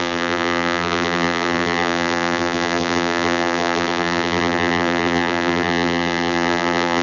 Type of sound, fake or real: fake